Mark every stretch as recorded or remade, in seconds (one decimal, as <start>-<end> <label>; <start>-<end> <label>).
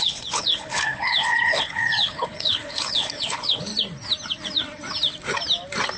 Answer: 0.0-3.7 remade; 3.7-6.0 recorded